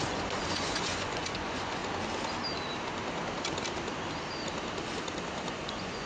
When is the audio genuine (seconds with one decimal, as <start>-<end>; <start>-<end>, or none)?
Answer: 1.8-5.5